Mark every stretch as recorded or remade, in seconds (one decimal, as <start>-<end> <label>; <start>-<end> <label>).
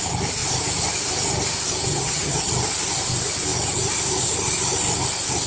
0.0-1.9 recorded; 1.9-2.5 remade; 2.5-5.5 recorded